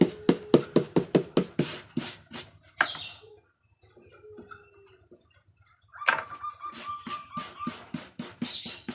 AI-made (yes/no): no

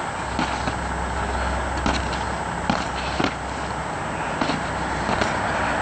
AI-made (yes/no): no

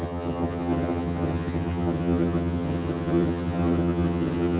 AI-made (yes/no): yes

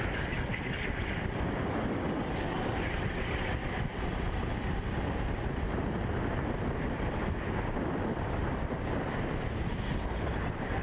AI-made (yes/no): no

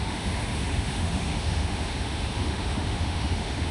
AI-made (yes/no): yes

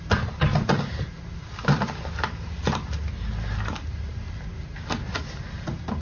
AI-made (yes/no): no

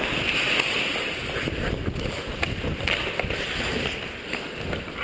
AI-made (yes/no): no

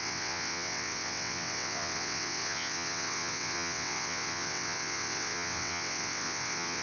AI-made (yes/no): yes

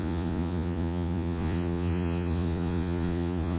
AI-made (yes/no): yes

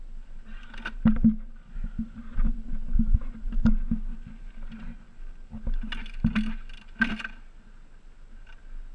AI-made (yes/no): no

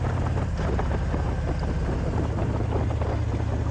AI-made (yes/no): no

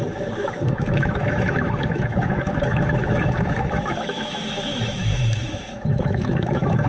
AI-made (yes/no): yes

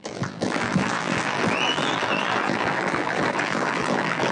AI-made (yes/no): yes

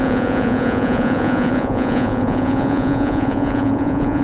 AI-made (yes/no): yes